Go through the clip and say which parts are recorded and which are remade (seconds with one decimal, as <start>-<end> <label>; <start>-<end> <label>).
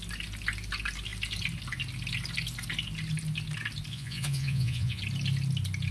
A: 0.0-3.9 recorded; 3.9-5.0 remade; 5.0-5.9 recorded